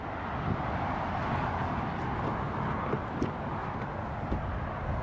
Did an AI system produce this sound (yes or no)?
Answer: no